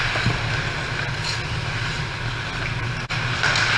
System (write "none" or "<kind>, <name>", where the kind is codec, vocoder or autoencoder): none